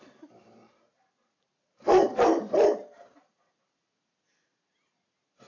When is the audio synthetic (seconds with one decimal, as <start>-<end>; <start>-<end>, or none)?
2.1-3.2